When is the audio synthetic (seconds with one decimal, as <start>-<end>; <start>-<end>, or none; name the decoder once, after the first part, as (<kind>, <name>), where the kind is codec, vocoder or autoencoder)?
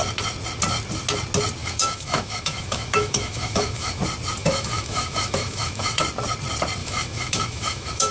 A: 1.6-4.0 (autoencoder, DAC-VAE); 4.4-6.0; 6.8-8.1